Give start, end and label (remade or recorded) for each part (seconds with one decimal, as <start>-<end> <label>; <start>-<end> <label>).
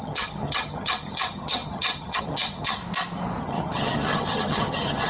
0.0-2.8 remade; 2.8-3.4 recorded; 3.4-5.1 remade